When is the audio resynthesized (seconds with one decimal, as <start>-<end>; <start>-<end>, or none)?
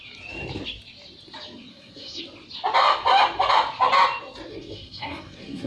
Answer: 1.7-2.2; 4.5-5.7